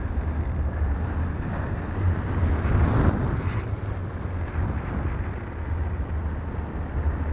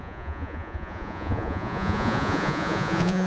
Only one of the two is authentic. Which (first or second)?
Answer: first